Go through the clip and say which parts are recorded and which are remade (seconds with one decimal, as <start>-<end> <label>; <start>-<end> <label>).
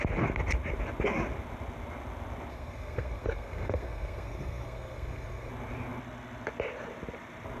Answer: 0.0-2.5 recorded; 2.5-5.5 remade; 5.5-7.6 recorded